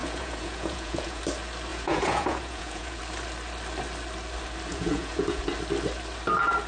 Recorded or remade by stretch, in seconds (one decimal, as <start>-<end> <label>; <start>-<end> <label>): 0.0-1.2 remade; 1.2-1.7 recorded; 1.7-3.0 remade; 3.0-4.7 recorded; 4.7-5.4 remade; 5.4-6.7 recorded